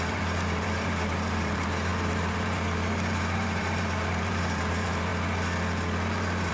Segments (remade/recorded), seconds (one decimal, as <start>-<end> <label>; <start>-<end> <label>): 0.0-5.1 remade; 5.1-6.5 recorded